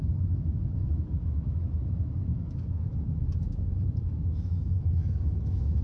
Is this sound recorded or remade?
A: remade